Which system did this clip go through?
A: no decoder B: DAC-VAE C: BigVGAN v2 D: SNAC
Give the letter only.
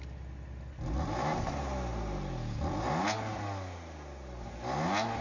A